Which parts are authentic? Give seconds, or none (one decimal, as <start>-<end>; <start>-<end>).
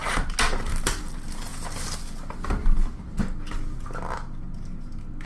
0.0-5.3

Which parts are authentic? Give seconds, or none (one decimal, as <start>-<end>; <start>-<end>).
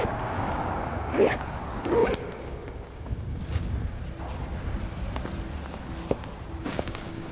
4.0-6.6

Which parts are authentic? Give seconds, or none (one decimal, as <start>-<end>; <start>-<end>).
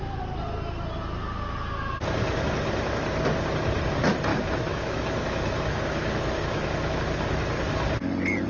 0.0-4.3; 7.0-8.5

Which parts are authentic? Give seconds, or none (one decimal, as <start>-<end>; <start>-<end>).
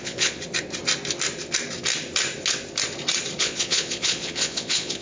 0.4-3.4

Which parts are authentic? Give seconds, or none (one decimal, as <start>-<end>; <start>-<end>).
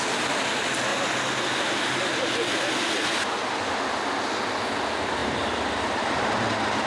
0.0-5.2; 6.5-6.9